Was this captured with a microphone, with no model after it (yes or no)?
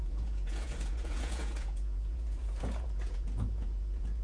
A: no